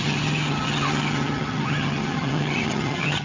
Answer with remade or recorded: remade